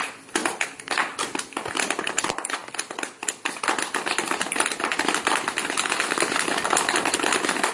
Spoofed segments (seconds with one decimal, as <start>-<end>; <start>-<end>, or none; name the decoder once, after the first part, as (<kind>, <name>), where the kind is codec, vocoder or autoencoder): none